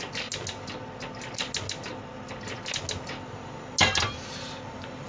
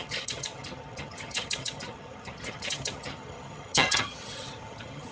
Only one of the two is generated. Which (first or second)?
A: second